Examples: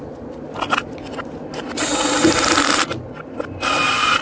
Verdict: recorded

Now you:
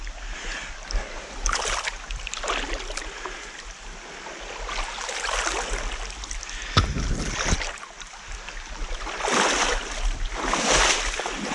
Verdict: recorded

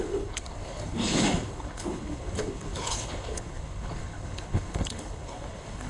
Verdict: remade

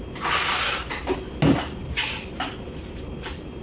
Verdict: recorded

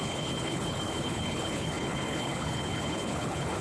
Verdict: remade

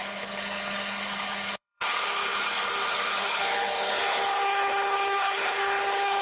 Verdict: remade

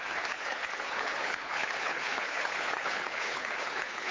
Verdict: remade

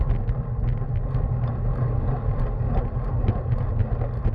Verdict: recorded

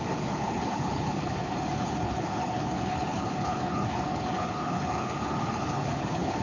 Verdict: remade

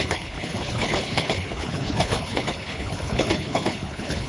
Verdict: remade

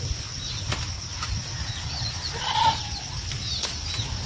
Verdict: recorded